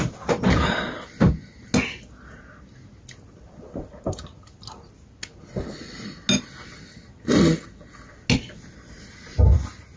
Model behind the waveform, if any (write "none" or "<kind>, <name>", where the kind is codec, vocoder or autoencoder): none